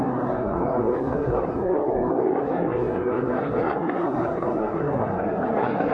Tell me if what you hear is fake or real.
fake